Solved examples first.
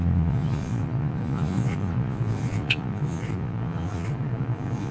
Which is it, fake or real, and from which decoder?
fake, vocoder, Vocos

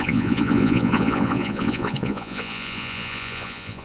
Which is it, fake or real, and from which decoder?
fake, vocoder, Vocos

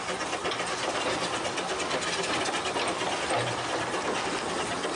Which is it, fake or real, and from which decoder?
real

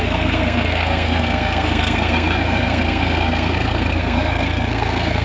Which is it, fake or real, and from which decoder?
fake, codec, SNAC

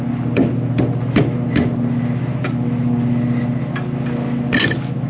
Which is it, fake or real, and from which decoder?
real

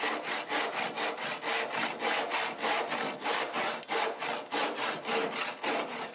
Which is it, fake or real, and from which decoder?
real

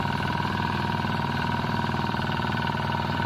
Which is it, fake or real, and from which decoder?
fake, vocoder, BigVGAN v2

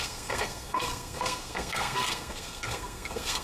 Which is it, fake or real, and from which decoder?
fake, codec, SNAC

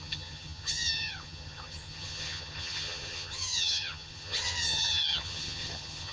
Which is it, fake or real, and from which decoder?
fake, vocoder, HiFi-GAN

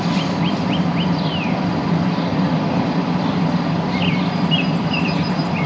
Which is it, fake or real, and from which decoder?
fake, vocoder, BigVGAN v2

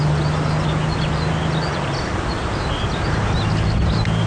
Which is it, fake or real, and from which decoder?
real